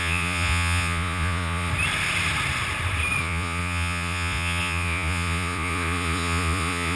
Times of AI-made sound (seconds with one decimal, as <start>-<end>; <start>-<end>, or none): 0.0-1.7; 3.2-7.0